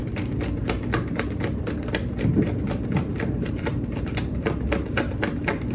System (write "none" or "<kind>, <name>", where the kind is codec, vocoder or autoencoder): vocoder, BigVGAN v2